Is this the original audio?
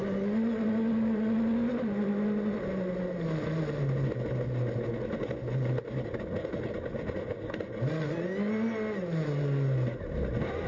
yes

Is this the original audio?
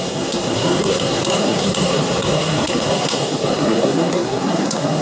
no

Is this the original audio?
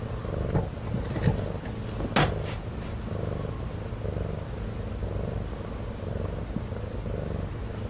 yes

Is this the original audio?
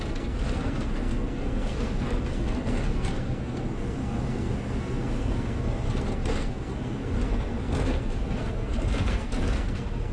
no